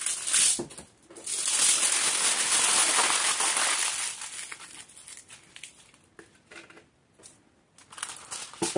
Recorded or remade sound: recorded